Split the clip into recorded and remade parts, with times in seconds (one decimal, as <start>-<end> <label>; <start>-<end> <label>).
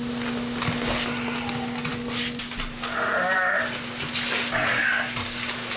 0.0-5.8 recorded